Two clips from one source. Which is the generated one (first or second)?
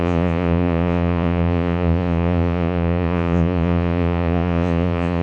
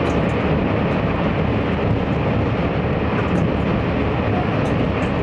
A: first